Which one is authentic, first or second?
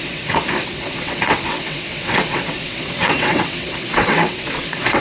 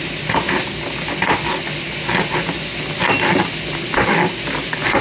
second